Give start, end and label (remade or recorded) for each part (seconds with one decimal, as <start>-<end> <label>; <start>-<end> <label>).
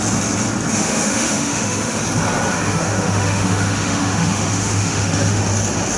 0.0-0.7 recorded; 0.7-2.0 remade; 2.0-2.5 recorded; 2.5-5.4 remade; 5.4-6.0 recorded